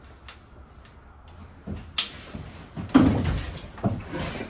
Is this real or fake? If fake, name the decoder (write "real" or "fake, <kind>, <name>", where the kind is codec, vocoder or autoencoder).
real